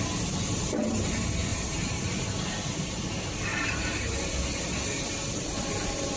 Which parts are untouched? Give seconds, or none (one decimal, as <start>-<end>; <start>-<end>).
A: 0.0-1.5; 3.0-3.5; 4.1-6.2